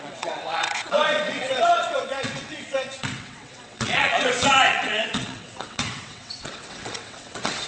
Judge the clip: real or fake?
fake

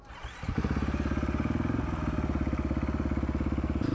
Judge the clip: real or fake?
real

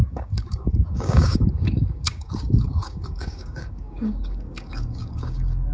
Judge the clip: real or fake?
fake